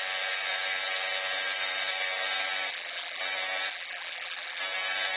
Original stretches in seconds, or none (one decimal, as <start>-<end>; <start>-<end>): 0.0-2.7; 3.2-3.7; 4.6-5.2